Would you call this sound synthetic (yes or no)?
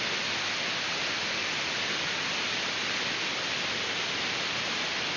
no